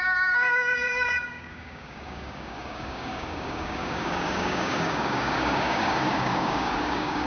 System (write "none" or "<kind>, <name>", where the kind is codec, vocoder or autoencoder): codec, DAC